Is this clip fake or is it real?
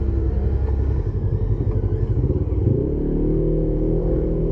real